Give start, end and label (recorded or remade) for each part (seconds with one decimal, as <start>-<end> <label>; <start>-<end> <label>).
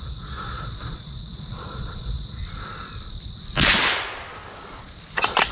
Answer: 0.0-2.4 remade; 2.4-5.5 recorded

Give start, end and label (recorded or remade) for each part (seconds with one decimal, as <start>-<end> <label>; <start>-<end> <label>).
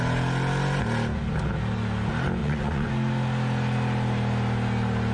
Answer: 0.0-2.4 recorded; 2.4-2.9 remade; 2.9-5.1 recorded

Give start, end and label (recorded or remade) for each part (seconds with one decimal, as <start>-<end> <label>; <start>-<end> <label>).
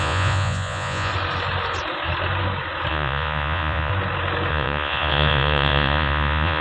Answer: 0.0-1.1 remade; 1.1-2.9 recorded; 2.9-3.9 remade; 3.9-4.5 recorded; 4.5-6.6 remade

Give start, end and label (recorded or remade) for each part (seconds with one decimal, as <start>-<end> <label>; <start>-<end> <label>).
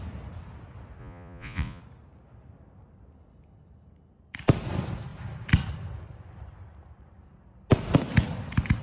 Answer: 0.0-1.0 recorded; 1.0-1.8 remade; 1.8-8.8 recorded